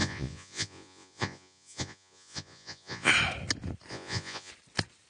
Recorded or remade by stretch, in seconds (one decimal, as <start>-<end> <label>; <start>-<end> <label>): 0.0-3.1 remade; 3.1-3.9 recorded; 3.9-4.5 remade; 4.5-5.1 recorded